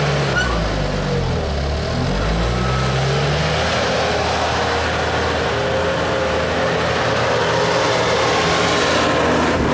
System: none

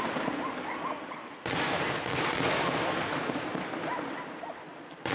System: none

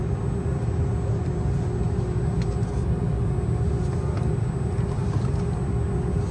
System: none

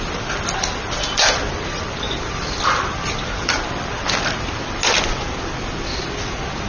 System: none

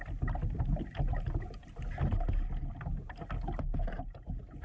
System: none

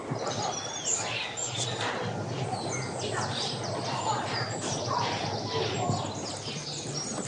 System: none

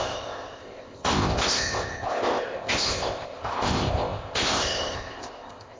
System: codec, ZipCodec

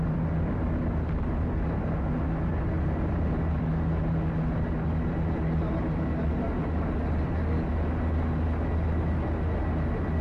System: none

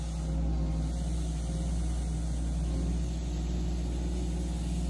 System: none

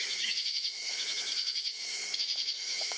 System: autoencoder, DAC-VAE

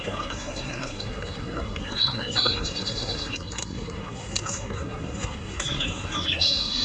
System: codec, SNAC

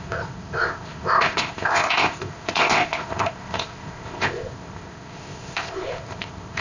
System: codec, ZipCodec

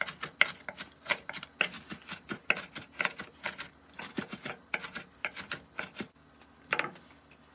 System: none